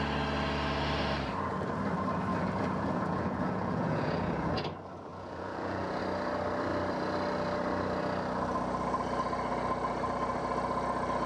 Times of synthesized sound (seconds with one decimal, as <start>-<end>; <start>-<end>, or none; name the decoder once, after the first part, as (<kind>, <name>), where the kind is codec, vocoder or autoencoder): 2.3-4.5 (vocoder, Vocos); 5.1-6.0